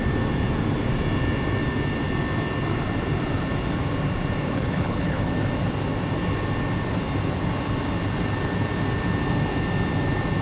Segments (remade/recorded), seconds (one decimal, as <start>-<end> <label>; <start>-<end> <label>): 0.0-4.4 recorded; 4.4-5.3 remade; 5.3-10.4 recorded